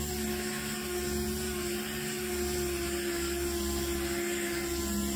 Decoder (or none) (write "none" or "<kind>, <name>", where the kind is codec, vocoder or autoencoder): none